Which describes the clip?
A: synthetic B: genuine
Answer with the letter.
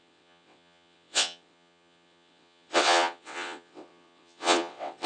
A